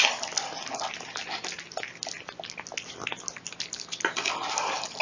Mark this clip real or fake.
real